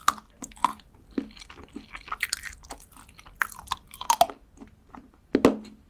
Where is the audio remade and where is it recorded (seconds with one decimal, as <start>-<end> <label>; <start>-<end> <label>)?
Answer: 0.0-5.9 recorded